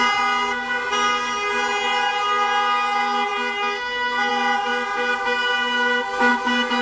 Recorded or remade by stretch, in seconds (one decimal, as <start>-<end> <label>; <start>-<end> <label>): 0.0-6.8 recorded